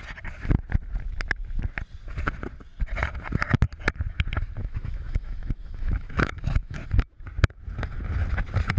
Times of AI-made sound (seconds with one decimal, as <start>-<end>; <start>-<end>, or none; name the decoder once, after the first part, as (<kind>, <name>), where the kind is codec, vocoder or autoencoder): 4.6-6.8 (autoencoder, DAC-VAE)